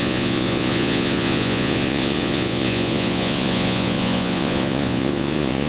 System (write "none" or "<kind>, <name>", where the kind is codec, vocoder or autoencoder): vocoder, Vocos